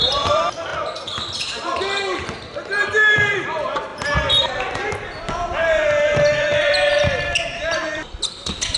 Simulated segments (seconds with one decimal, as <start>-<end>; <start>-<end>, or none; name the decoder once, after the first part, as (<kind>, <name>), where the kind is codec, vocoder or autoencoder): 0.0-0.7 (vocoder, BigVGAN v2); 2.4-8.8